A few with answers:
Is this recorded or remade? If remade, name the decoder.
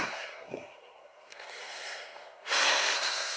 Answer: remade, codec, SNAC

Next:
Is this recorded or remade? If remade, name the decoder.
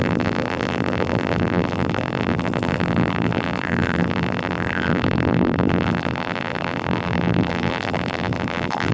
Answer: remade, vocoder, BigVGAN v2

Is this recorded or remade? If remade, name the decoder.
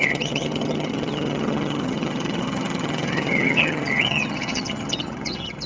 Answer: remade, vocoder, HiFi-GAN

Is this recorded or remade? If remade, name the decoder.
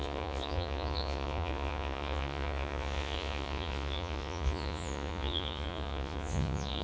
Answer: remade, vocoder, Vocos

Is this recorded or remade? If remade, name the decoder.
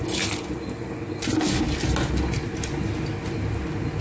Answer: recorded